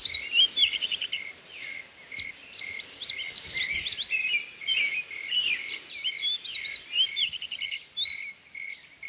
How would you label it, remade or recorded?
remade